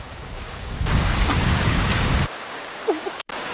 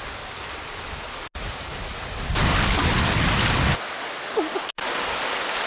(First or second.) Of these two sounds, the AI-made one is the first